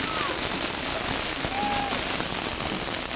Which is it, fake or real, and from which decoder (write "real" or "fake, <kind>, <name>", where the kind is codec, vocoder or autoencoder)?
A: real